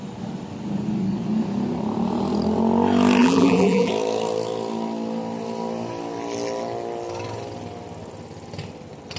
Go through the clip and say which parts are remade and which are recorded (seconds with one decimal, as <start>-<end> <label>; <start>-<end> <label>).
0.0-3.2 recorded; 3.2-3.9 remade; 3.9-9.2 recorded